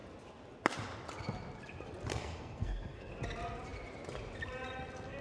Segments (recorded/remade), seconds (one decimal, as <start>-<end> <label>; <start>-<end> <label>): 0.0-2.1 recorded; 2.1-3.1 remade; 3.1-5.2 recorded